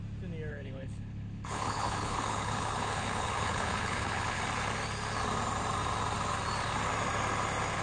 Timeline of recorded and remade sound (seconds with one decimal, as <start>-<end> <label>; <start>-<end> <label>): 0.0-0.5 recorded; 0.5-4.4 remade; 4.4-7.8 recorded